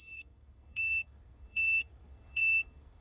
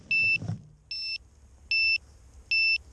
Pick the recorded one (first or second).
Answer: second